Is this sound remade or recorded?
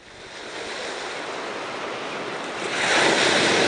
recorded